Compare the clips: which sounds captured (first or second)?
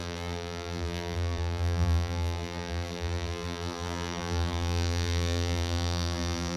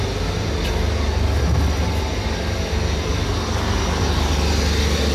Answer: second